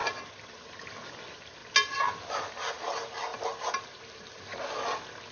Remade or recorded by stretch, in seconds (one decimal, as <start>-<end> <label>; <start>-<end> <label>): 0.0-5.3 recorded